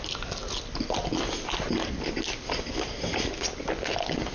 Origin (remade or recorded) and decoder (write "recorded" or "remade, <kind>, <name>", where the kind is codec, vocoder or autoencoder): recorded